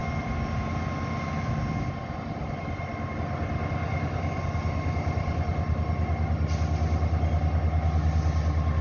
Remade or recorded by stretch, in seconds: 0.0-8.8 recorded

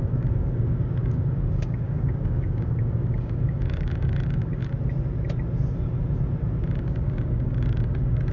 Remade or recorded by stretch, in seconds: 0.0-4.6 remade; 4.6-6.8 recorded; 6.8-8.3 remade

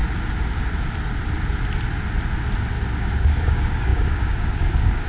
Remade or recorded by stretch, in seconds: 0.0-3.1 recorded; 3.1-5.1 remade

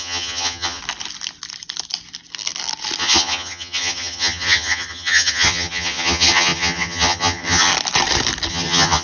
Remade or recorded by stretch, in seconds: 0.0-0.8 remade; 0.8-3.0 recorded; 3.0-7.7 remade; 7.7-8.5 recorded; 8.5-9.0 remade